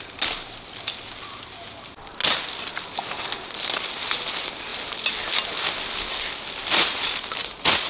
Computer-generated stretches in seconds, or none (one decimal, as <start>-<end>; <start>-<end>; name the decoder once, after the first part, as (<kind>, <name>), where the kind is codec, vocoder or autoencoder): 7.4-7.9 (vocoder, Vocos)